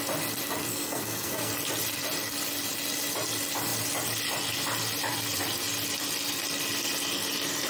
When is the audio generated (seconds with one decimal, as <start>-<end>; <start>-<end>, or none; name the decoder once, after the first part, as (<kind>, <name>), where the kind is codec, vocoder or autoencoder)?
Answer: 0.7-1.5 (codec, SNAC)